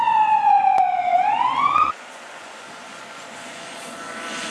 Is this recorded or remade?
remade